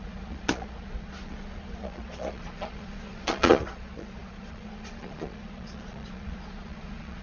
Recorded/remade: remade